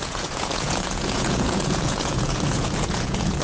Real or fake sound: fake